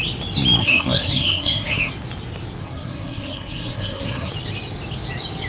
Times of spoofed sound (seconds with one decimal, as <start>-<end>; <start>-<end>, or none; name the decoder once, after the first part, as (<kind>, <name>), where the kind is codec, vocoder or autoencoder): 0.6-1.9 (codec, SNAC); 2.6-4.3